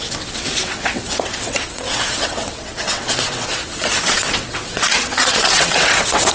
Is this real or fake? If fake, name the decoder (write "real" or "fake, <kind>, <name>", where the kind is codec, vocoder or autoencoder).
fake, vocoder, WaveNeXt